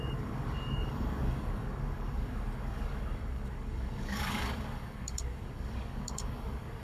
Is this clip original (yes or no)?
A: no